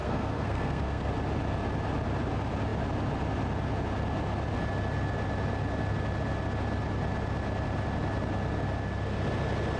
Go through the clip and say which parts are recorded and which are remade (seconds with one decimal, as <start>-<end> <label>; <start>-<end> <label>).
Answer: 0.0-1.1 remade; 1.1-9.8 recorded